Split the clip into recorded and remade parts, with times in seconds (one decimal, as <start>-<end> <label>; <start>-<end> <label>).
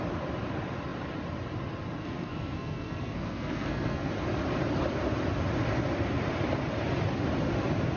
0.0-2.0 recorded; 2.0-4.1 remade; 4.1-8.0 recorded